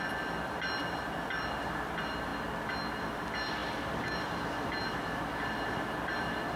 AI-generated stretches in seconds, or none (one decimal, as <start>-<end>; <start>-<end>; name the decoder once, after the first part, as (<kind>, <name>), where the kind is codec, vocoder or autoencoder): none